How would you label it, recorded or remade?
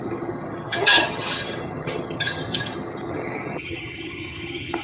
remade